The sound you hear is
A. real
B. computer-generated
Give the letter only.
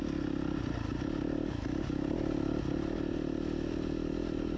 A